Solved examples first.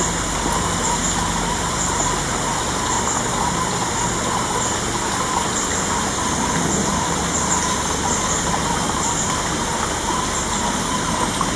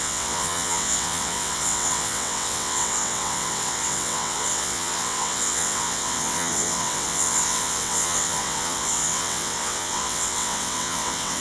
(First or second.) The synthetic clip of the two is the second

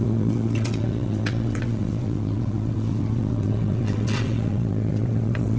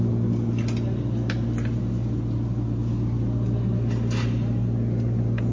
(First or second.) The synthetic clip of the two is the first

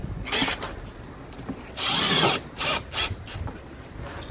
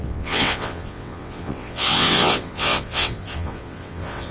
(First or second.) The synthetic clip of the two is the second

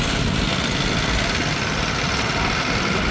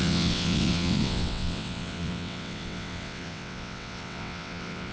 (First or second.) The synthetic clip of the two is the second